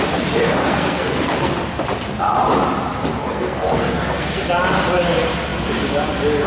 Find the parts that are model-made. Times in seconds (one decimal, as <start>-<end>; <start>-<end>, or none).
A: 0.6-1.5; 3.2-4.4